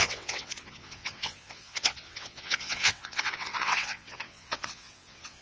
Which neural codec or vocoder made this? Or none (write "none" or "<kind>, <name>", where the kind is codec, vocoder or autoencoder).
vocoder, WaveNeXt